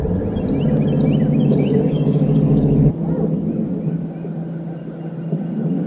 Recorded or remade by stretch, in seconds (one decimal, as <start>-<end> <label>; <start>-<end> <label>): 0.0-1.5 recorded; 1.5-2.9 remade; 2.9-5.9 recorded